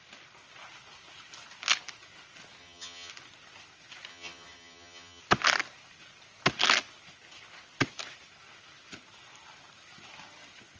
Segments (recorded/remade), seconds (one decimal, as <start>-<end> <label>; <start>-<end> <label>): 0.0-2.6 recorded; 2.6-3.1 remade; 3.1-4.1 recorded; 4.1-5.2 remade; 5.2-10.8 recorded